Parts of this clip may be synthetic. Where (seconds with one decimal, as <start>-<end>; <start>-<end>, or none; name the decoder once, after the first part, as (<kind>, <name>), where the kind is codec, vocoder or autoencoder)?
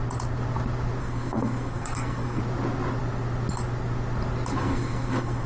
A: 1.0-2.4 (codec, SNAC); 4.6-5.5